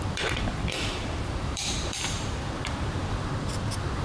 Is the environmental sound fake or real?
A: fake